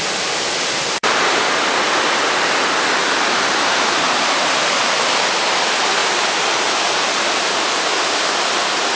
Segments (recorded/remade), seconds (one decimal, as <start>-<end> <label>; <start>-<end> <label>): 0.0-1.0 recorded; 1.0-1.5 remade; 1.5-3.0 recorded; 3.0-4.3 remade; 4.3-6.0 recorded; 6.0-7.7 remade; 7.7-9.0 recorded